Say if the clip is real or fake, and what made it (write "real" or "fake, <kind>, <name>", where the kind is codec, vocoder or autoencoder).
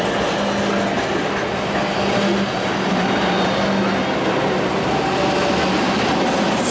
real